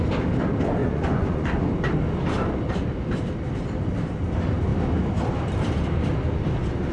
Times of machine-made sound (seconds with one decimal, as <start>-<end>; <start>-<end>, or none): 0.8-1.7